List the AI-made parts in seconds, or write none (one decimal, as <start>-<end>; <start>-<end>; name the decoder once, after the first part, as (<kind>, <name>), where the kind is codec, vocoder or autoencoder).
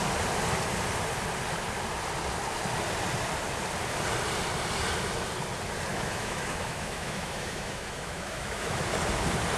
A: 5.9-8.8 (autoencoder, DAC-VAE)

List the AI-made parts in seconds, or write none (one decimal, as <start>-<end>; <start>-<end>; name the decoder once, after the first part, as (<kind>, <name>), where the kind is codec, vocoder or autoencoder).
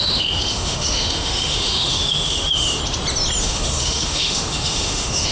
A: 0.0-2.8 (autoencoder, DAC-VAE); 3.4-5.3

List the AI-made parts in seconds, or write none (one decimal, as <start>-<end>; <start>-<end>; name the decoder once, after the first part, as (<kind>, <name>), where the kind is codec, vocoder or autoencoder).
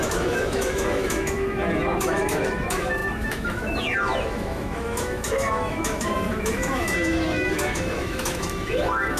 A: 0.0-9.2 (autoencoder, DAC-VAE)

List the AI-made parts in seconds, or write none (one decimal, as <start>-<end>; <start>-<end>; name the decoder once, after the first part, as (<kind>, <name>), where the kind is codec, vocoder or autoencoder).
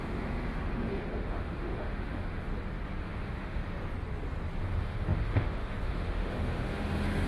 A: 0.0-2.5 (autoencoder, DAC-VAE); 3.0-3.6; 4.6-7.3